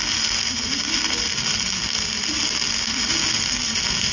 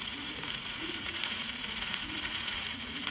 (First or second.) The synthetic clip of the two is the second